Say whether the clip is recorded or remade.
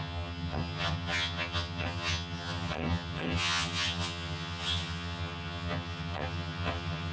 remade